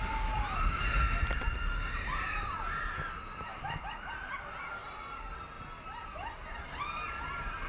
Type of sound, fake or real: real